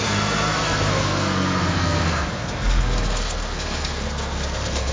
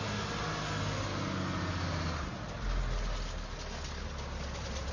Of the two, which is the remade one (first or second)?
first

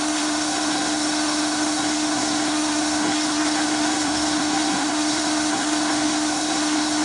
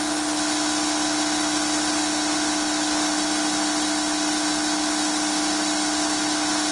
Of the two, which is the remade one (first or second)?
first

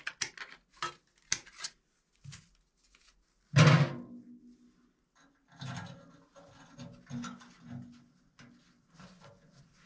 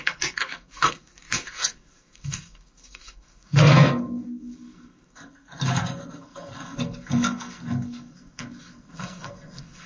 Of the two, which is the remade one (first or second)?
second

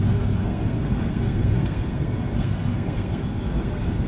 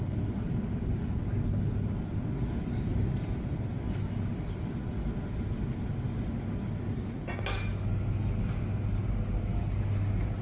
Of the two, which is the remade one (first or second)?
first